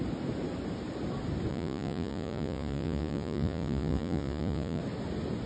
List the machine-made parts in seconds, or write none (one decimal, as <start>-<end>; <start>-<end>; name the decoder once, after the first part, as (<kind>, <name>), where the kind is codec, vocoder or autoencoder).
1.5-4.8 (vocoder, Vocos)